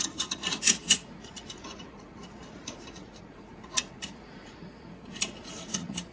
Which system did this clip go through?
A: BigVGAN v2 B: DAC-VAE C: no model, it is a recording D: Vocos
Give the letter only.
D